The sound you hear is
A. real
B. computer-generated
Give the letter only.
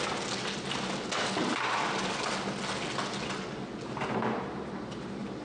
A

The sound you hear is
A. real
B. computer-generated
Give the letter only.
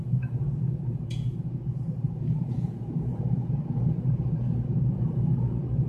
B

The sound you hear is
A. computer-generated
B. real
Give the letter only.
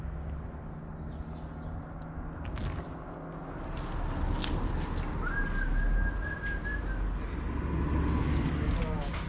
B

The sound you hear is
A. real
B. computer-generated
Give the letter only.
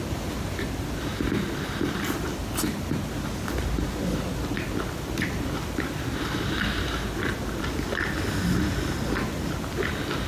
A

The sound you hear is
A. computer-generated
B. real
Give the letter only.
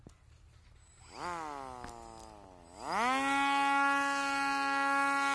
B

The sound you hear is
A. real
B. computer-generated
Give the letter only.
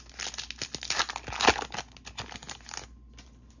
A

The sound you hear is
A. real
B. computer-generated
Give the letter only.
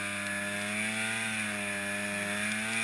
A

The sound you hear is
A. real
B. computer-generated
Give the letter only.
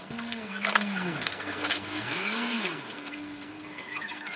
B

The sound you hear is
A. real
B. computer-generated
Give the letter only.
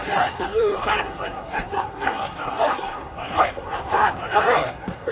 B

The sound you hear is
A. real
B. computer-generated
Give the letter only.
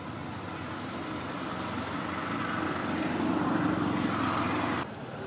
A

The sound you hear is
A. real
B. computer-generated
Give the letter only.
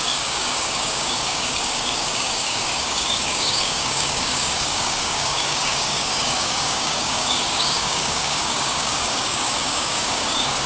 B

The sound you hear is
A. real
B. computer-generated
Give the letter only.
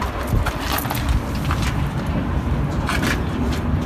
A